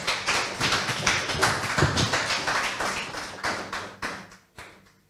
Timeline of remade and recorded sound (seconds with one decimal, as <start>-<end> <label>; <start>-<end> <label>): 0.0-1.4 remade; 1.4-4.5 recorded; 4.5-5.1 remade